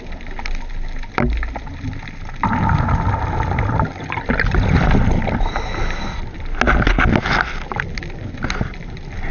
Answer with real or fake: real